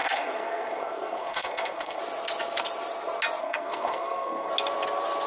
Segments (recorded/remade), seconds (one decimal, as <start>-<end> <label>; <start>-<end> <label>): 0.0-2.0 remade; 2.0-3.4 recorded; 3.4-4.5 remade; 4.5-5.3 recorded